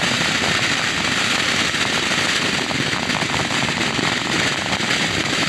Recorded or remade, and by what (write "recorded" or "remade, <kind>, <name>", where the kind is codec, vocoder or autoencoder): recorded